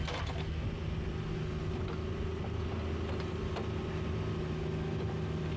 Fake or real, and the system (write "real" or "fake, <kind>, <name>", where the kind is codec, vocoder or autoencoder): real